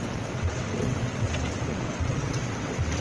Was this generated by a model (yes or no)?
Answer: yes